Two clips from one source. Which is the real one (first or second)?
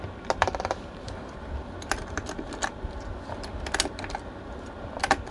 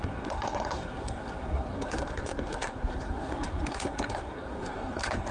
first